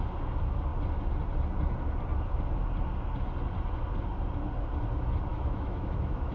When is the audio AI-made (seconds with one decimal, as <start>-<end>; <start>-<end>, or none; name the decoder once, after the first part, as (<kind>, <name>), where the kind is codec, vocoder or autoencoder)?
5.3-6.3 (autoencoder, DAC-VAE)